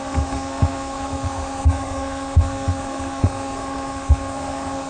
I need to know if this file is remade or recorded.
remade